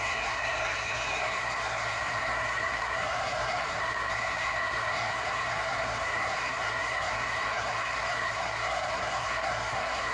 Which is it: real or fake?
fake